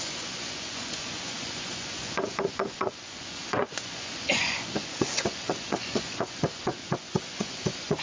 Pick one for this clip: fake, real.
fake